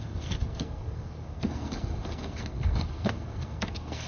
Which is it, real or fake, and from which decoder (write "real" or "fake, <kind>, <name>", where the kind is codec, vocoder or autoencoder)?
fake, codec, SNAC